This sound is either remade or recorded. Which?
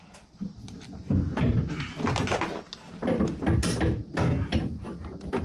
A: recorded